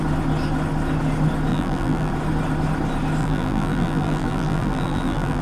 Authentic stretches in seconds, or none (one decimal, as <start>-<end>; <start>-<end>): 0.0-1.5; 2.1-3.2